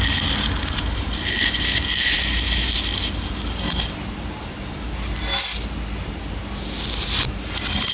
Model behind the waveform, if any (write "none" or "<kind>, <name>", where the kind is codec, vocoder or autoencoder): none